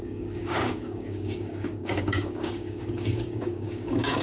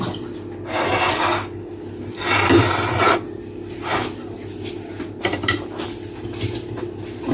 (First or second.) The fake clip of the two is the first